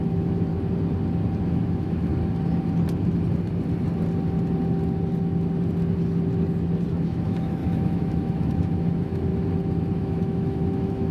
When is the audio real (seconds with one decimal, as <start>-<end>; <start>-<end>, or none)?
0.5-1.5; 2.1-6.9; 9.3-10.0